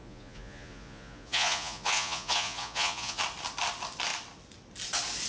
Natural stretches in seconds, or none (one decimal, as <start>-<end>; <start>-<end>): 3.2-5.3